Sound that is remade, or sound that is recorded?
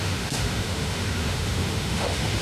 remade